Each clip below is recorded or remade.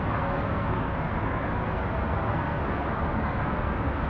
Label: remade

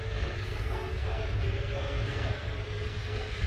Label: remade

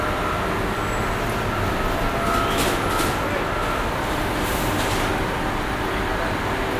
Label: recorded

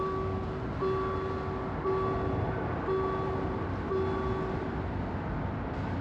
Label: recorded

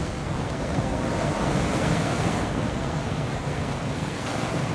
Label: remade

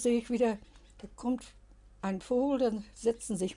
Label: recorded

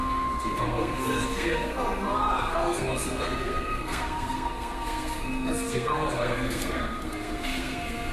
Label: remade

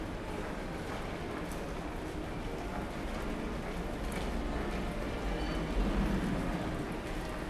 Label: recorded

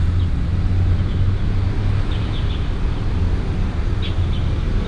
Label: recorded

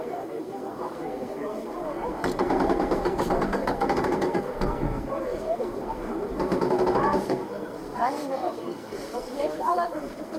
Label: remade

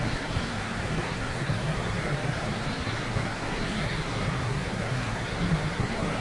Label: remade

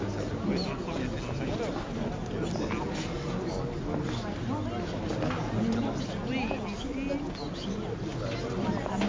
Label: recorded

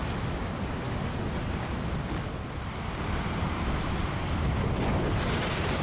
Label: recorded